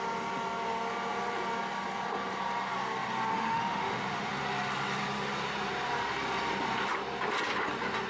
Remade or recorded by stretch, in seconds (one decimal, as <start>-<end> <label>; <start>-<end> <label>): 0.0-3.3 recorded; 3.3-4.3 remade; 4.3-8.1 recorded